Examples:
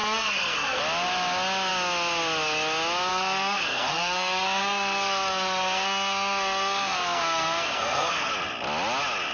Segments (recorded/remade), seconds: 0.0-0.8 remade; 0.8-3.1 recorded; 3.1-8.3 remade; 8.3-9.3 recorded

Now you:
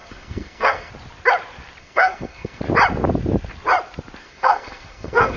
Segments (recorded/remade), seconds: 0.0-0.9 remade; 0.9-1.8 recorded; 1.8-2.6 remade; 2.6-4.2 recorded; 4.2-5.4 remade

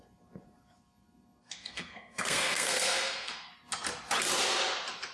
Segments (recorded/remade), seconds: 0.0-1.4 recorded; 1.4-3.5 remade; 3.5-5.1 recorded